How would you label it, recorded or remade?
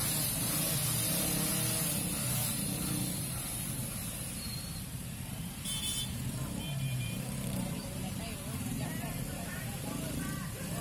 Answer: remade